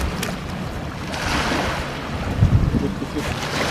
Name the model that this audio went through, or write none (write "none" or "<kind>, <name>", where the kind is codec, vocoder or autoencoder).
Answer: none